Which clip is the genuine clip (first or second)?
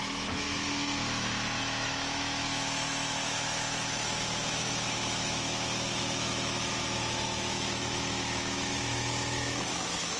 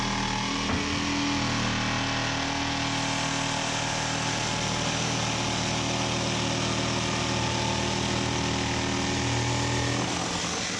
second